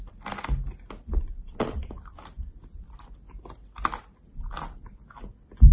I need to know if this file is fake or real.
real